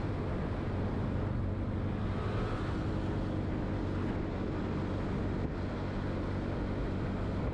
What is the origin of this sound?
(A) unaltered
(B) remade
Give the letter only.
A